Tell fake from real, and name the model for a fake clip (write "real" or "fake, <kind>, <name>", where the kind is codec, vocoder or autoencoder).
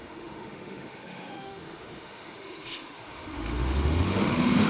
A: fake, autoencoder, DAC-VAE